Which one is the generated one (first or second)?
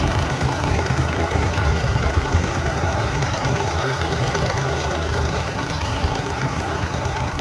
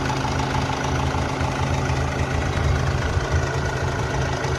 first